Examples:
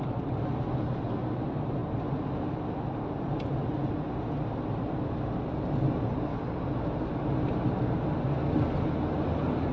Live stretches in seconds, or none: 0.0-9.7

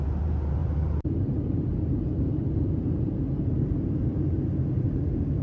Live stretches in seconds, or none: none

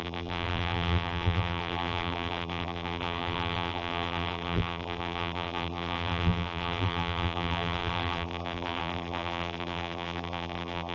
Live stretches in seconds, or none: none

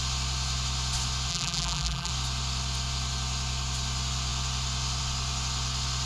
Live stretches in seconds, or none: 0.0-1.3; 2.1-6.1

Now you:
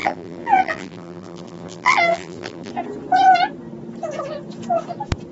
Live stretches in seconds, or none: 2.7-5.3

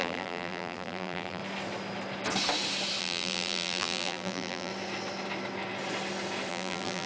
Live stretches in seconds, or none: 1.4-3.0; 4.7-6.5